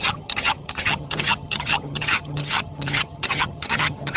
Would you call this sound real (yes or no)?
no